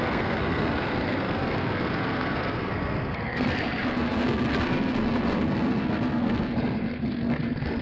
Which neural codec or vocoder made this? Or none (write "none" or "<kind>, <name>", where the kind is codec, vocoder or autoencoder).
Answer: codec, SNAC